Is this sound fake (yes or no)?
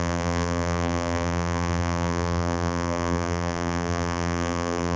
yes